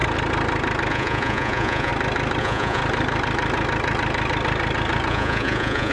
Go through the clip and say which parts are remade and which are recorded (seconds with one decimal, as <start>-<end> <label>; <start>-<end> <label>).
0.0-0.9 recorded; 0.9-1.9 remade; 1.9-2.4 recorded; 2.4-2.8 remade; 2.8-5.1 recorded; 5.1-5.9 remade